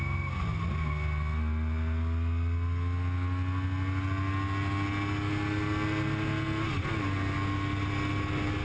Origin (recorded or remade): recorded